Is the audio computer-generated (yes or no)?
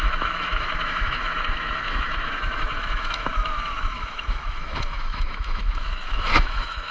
yes